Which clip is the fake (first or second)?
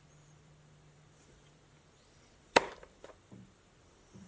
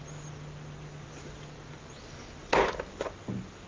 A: first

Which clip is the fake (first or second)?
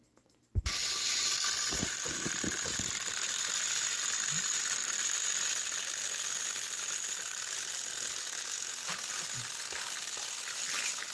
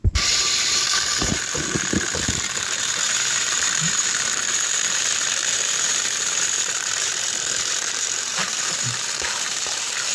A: second